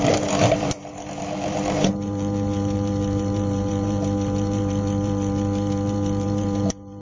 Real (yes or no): no